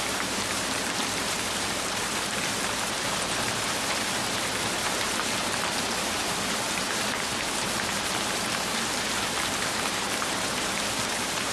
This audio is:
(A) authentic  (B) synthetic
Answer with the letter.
B